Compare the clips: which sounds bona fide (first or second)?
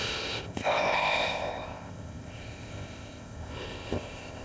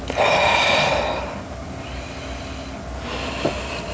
second